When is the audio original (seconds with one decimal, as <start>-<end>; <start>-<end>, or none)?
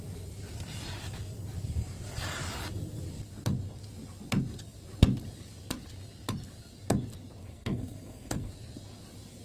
0.0-7.4; 8.5-9.4